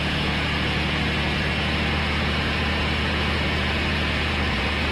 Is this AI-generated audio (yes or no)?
yes